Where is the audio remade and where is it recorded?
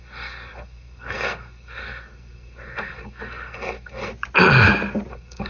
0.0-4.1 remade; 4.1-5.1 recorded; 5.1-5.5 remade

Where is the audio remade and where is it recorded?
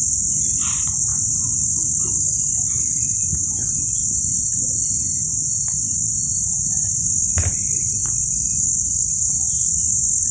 0.0-1.1 remade; 1.1-3.8 recorded; 3.8-10.3 remade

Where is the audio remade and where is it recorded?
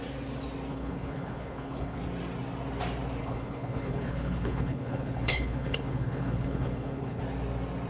0.0-0.7 recorded; 0.7-2.0 remade; 2.0-3.2 recorded; 3.2-7.2 remade; 7.2-7.9 recorded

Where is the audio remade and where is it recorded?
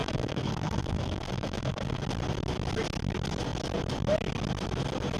0.0-2.0 remade; 2.0-5.2 recorded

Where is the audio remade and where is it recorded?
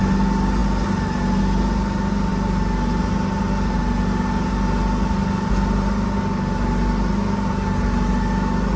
0.0-8.8 recorded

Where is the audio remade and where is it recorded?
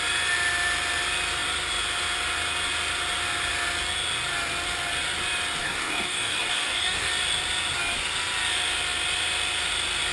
0.0-5.6 recorded; 5.6-7.1 remade; 7.1-10.1 recorded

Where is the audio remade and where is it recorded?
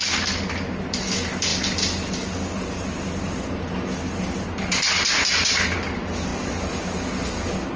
0.0-6.3 remade; 6.3-7.8 recorded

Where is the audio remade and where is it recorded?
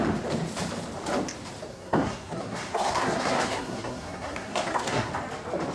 0.0-1.7 recorded; 1.7-5.1 remade; 5.1-5.7 recorded